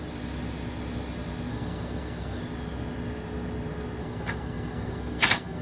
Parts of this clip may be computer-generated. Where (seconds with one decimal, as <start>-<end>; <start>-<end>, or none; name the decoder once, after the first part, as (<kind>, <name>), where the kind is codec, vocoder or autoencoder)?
1.5-2.4 (codec, SNAC); 4.0-5.6